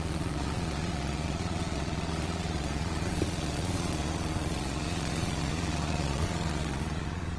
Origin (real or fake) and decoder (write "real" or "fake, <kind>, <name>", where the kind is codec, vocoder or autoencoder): fake, vocoder, Vocos